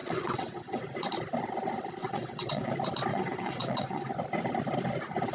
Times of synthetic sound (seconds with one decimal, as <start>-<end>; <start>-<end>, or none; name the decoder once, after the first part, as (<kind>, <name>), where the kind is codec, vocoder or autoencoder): 0.0-0.8 (vocoder, WaveNeXt); 2.0-2.7; 3.1-4.1